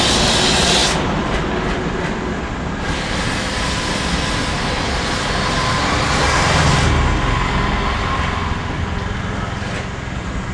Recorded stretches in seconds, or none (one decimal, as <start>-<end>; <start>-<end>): 0.0-0.8; 2.3-10.5